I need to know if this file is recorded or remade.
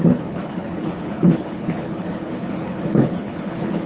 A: remade